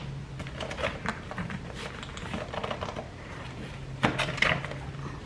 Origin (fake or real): real